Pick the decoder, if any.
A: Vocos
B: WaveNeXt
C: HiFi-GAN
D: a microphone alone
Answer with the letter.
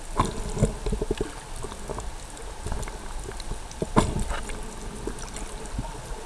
D